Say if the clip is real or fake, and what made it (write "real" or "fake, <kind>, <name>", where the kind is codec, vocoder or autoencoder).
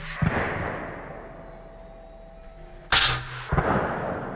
real